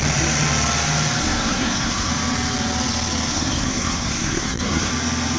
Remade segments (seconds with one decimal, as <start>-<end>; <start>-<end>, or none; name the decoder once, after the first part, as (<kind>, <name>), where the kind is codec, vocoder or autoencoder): 1.2-2.1 (codec, SNAC); 3.3-4.9